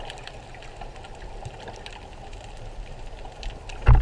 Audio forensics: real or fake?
real